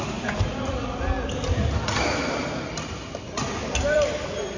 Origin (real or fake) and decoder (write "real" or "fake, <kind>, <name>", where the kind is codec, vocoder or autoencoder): real